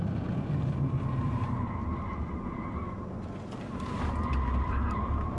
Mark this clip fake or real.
fake